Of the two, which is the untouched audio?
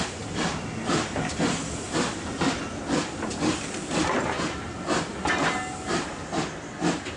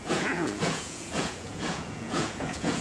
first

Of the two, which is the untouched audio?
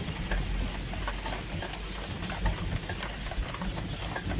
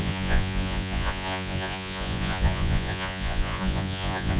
first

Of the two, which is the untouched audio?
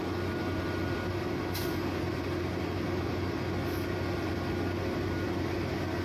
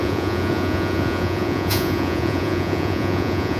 first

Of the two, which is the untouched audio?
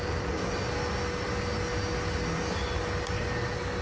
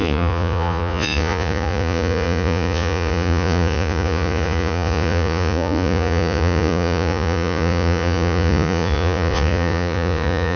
first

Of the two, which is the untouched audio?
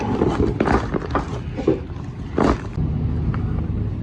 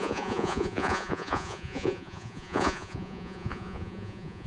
first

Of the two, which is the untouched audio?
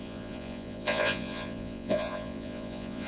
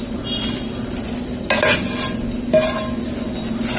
second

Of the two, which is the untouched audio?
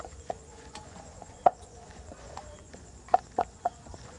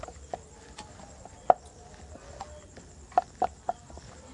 second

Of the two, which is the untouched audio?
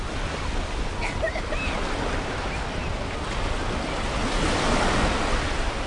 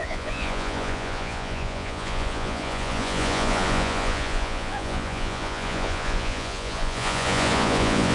first